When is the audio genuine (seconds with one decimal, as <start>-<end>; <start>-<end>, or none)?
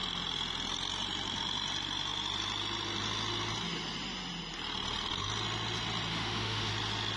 0.0-6.1; 6.7-7.2